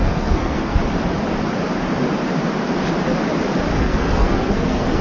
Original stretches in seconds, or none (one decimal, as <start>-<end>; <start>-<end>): 0.8-3.8